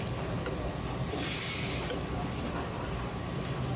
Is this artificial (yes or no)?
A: no